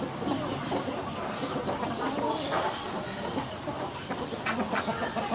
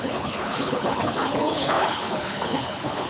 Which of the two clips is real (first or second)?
first